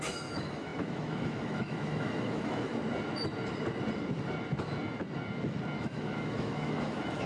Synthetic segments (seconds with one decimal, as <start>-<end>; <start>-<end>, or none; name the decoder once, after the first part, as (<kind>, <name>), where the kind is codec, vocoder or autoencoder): 0.0-2.7 (autoencoder, DAC-VAE); 5.8-7.3